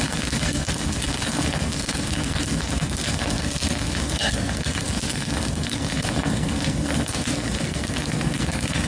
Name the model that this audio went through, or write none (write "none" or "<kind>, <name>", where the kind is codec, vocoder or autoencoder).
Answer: codec, SNAC